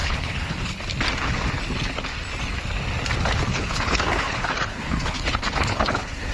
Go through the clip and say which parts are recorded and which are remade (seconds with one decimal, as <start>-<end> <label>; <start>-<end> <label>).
0.0-0.8 remade; 0.8-3.5 recorded; 3.5-6.3 remade

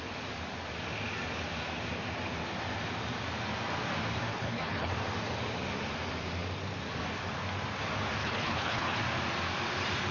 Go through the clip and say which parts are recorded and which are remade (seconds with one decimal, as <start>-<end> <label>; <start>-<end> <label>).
0.0-4.3 recorded; 4.3-4.9 remade; 4.9-8.2 recorded; 8.2-9.0 remade; 9.0-10.1 recorded

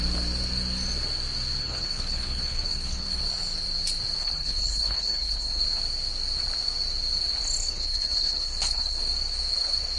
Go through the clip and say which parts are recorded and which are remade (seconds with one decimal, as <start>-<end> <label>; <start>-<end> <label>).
0.0-1.6 recorded; 1.6-3.2 remade; 3.2-4.2 recorded; 4.2-5.6 remade; 5.6-7.6 recorded; 7.6-9.0 remade; 9.0-10.0 recorded